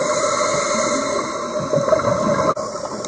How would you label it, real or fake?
real